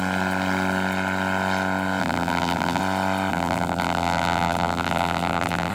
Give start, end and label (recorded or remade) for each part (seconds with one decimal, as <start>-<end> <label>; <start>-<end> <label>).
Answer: 0.0-2.0 recorded; 2.0-2.8 remade; 2.8-3.3 recorded; 3.3-5.7 remade